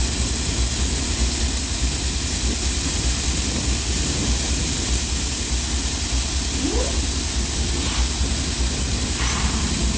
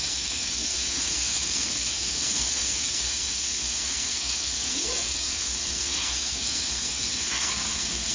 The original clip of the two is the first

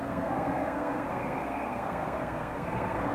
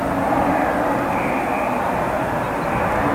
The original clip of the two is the second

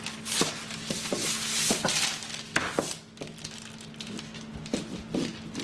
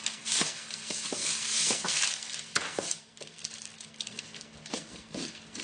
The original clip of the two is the first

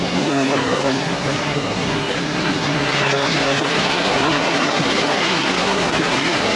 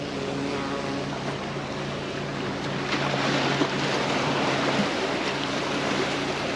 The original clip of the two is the second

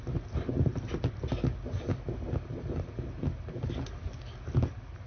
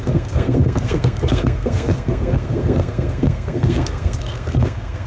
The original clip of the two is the first